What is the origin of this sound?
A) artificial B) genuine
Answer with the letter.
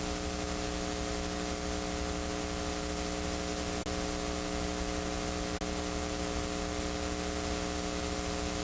B